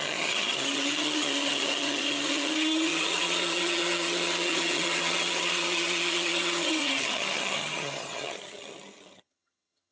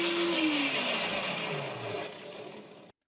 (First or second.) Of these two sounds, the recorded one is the second